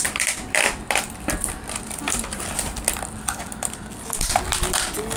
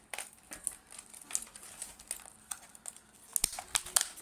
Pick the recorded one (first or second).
second